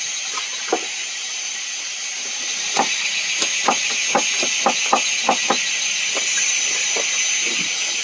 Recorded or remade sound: recorded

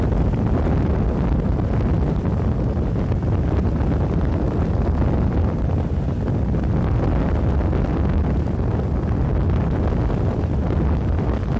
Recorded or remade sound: recorded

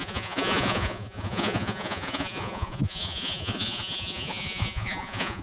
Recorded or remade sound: remade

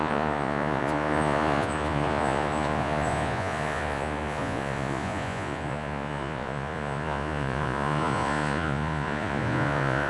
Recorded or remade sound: remade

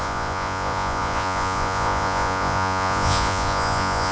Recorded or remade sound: remade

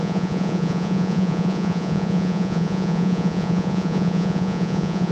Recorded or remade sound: remade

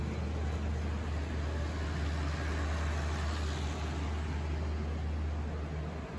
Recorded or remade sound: recorded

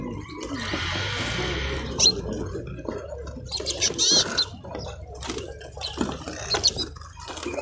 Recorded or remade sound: recorded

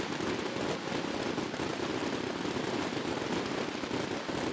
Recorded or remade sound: recorded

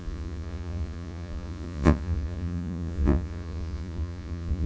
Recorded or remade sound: remade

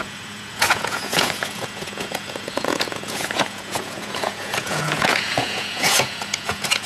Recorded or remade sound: remade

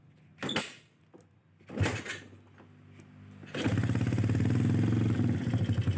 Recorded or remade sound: recorded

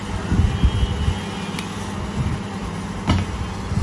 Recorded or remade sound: recorded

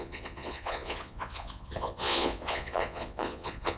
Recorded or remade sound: remade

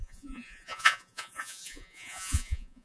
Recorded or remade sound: remade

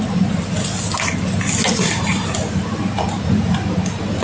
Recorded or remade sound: recorded